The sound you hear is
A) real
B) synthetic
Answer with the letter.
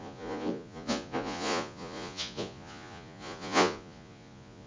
B